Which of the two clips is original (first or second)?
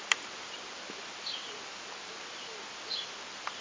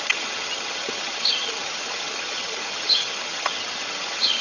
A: first